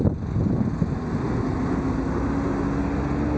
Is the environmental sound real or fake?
real